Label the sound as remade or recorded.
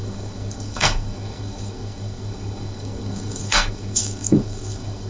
remade